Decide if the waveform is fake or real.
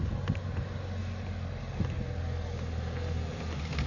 real